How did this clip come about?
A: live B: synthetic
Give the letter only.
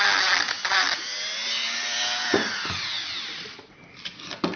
B